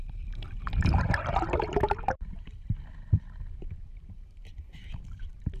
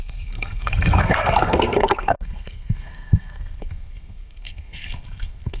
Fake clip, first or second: second